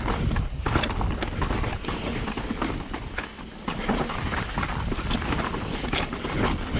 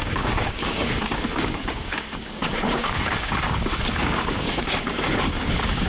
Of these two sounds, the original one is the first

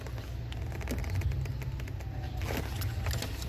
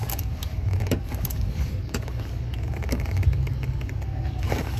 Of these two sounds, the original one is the first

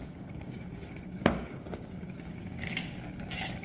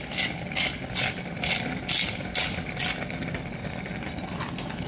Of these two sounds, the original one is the second